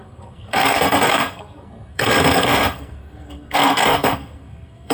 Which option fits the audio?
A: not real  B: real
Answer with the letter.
A